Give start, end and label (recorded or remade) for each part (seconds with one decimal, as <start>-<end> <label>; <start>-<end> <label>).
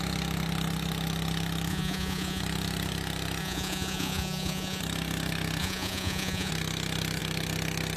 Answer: 0.0-1.7 recorded; 1.7-2.4 remade; 2.4-3.4 recorded; 3.4-4.8 remade; 4.8-5.6 recorded; 5.6-6.5 remade; 6.5-8.0 recorded